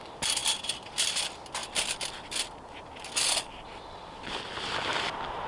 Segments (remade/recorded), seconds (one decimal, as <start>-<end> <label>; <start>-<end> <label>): 0.0-0.4 recorded; 0.4-1.2 remade; 1.2-5.5 recorded